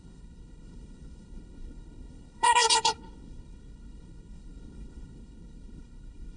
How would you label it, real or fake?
fake